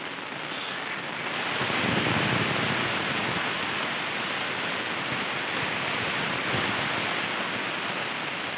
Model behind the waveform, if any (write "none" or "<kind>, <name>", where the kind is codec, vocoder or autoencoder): none